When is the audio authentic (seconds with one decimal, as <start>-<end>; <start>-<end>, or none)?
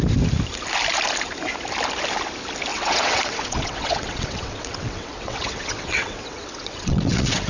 0.0-2.7